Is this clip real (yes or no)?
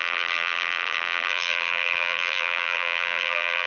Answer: no